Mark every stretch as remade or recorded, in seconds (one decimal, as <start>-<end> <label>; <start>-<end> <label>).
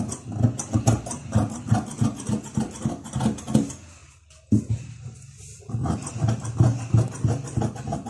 0.0-8.1 recorded